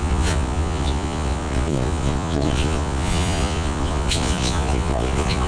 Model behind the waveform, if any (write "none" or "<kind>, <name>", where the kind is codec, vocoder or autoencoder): vocoder, Vocos